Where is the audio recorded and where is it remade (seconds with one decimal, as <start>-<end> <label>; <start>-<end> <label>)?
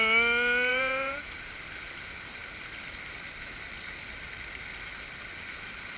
0.0-0.7 recorded; 0.7-1.3 remade; 1.3-6.0 recorded